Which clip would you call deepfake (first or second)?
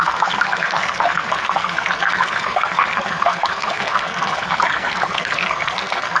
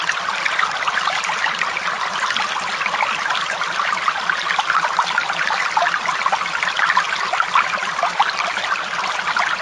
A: first